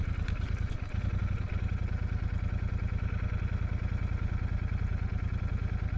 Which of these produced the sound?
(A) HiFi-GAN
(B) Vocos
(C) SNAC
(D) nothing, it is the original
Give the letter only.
D